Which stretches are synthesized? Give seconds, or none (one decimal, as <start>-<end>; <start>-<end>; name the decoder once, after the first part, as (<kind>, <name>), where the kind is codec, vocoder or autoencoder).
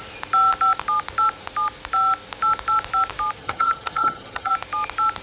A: 3.4-4.5 (vocoder, HiFi-GAN)